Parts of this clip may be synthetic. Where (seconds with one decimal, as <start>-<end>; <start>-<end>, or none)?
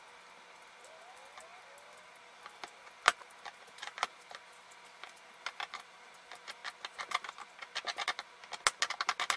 none